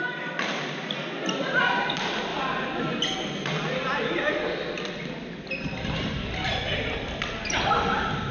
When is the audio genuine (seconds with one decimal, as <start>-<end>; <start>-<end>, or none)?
0.0-8.3